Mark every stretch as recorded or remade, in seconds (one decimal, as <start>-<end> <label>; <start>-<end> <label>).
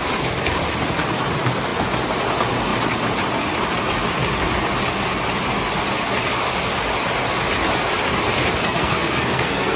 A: 0.0-8.6 recorded; 8.6-9.8 remade